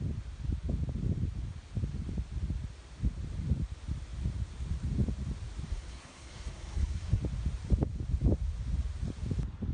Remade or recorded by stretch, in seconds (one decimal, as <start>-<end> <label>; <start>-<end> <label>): 0.0-5.7 recorded; 5.7-7.2 remade; 7.2-9.7 recorded